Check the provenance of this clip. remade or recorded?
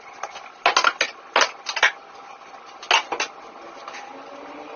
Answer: recorded